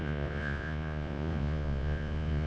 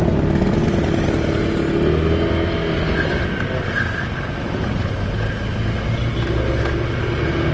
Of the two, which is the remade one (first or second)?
first